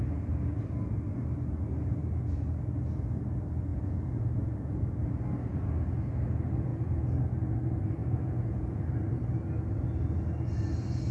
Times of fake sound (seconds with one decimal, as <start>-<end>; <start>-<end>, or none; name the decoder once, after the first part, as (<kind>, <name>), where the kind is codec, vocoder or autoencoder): 3.7-4.8 (vocoder, Vocos); 6.7-7.2; 8.0-8.8